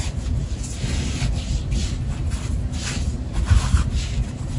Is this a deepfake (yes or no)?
no